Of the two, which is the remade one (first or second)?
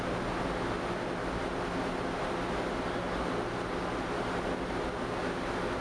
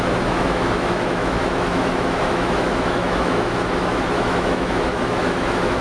second